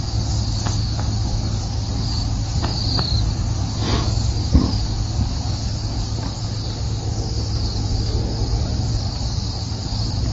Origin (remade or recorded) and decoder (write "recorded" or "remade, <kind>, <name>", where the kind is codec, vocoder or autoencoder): recorded